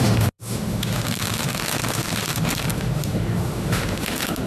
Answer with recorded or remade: remade